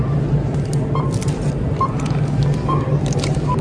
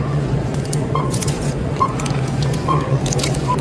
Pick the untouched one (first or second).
first